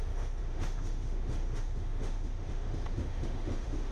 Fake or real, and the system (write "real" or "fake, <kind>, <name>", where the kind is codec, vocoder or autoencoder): fake, autoencoder, DAC-VAE